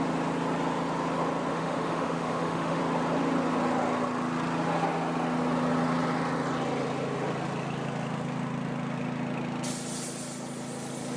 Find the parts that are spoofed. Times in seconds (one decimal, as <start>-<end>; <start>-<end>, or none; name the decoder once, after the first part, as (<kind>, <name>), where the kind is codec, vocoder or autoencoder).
1.5-2.8 (autoencoder, DAC-VAE)